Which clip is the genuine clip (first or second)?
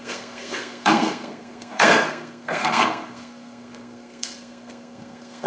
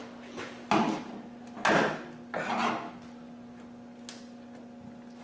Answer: second